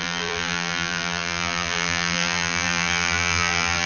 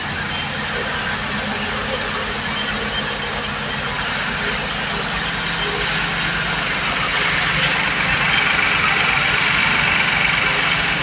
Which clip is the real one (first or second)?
second